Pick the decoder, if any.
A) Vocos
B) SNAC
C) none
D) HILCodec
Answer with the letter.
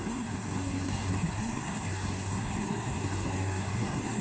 B